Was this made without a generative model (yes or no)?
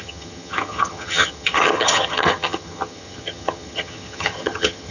no